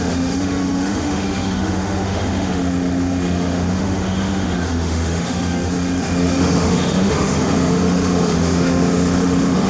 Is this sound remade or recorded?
remade